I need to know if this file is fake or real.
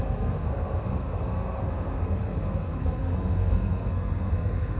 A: fake